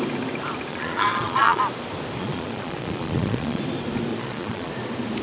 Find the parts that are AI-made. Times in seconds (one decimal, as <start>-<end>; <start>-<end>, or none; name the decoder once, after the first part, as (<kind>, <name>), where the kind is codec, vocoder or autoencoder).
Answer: 0.7-1.6 (vocoder, Vocos); 2.2-3.6; 4.1-4.7